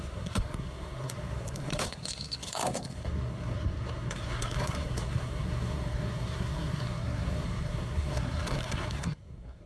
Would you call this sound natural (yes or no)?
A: no